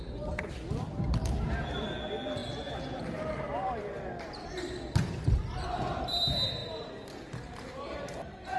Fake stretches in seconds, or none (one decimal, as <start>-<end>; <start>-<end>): none